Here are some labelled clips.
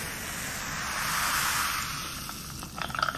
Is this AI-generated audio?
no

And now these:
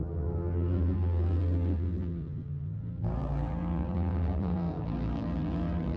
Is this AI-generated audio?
yes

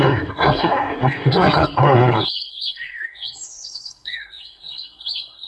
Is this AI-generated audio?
yes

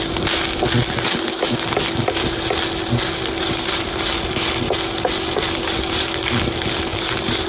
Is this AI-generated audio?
no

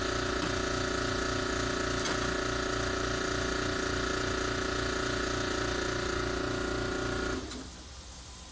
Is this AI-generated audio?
no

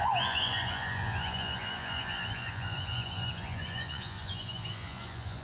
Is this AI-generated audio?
yes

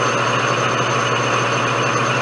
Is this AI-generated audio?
no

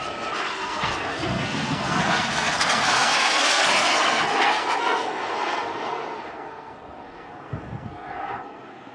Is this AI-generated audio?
yes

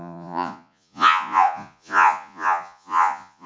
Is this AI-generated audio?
yes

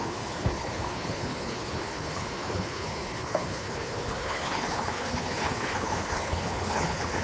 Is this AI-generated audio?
yes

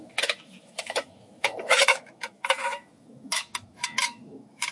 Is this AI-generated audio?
yes